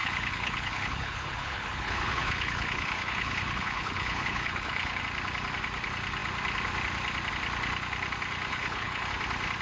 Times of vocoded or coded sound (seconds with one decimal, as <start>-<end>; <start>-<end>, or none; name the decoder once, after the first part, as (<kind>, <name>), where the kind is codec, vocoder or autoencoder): 0.0-5.0 (codec, HILCodec); 8.5-9.1

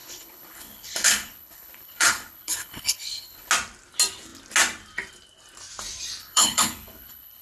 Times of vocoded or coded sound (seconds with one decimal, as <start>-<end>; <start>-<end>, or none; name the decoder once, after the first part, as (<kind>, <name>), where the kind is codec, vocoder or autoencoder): 0.0-3.5 (codec, HILCodec); 6.2-7.4